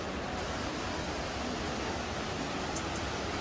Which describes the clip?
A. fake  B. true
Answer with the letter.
B